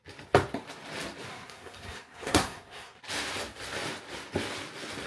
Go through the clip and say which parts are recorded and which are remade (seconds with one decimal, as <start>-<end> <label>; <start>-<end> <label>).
0.0-1.3 recorded; 1.3-3.0 remade; 3.0-5.1 recorded